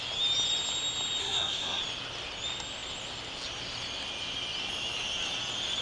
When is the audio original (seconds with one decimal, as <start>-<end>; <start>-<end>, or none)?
0.0-1.2; 1.8-5.8